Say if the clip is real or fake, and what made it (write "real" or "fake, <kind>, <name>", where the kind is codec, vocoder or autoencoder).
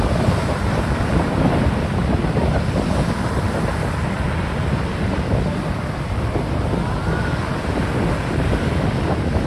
real